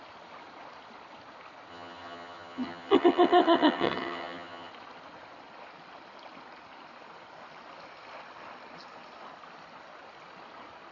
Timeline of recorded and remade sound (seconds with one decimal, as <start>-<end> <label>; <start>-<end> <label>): 0.0-1.7 recorded; 1.7-4.7 remade; 4.7-10.9 recorded